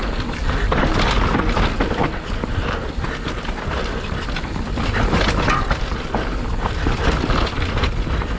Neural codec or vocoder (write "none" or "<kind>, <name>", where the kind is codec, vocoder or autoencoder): none